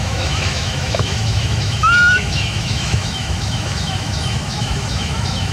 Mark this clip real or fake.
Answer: fake